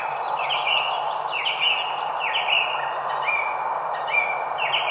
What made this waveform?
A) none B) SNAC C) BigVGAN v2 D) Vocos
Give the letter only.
A